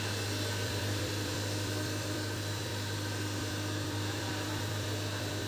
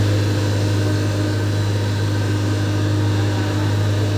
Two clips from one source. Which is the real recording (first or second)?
second